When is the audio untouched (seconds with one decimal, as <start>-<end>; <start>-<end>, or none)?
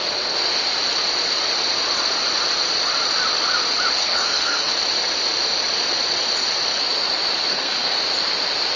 0.0-4.0; 4.7-7.5; 8.0-8.8